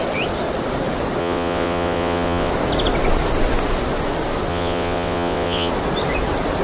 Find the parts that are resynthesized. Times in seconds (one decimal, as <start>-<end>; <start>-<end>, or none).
1.2-2.5; 4.5-5.7